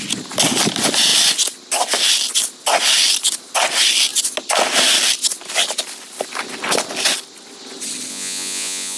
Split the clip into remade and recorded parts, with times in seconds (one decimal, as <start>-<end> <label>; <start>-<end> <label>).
0.0-8.1 recorded; 8.1-9.0 remade